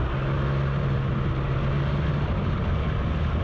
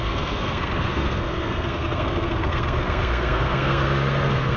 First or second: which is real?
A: first